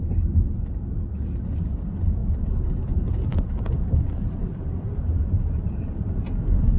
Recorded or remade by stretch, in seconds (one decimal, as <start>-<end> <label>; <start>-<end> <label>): 0.0-2.2 recorded; 2.2-5.8 remade; 5.8-6.8 recorded